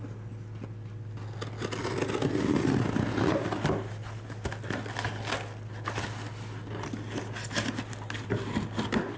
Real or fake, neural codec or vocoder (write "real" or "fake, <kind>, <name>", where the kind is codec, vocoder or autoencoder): real